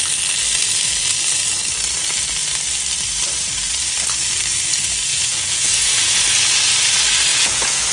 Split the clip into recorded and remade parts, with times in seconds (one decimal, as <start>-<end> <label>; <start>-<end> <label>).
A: 0.0-5.1 recorded; 5.1-6.2 remade; 6.2-7.3 recorded; 7.3-7.9 remade